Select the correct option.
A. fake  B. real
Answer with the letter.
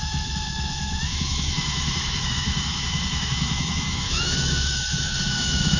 A